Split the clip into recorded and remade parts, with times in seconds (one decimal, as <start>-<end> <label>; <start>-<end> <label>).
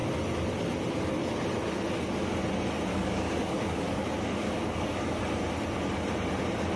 0.0-2.9 recorded; 2.9-5.2 remade; 5.2-6.8 recorded